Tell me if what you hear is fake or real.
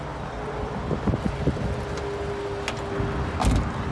real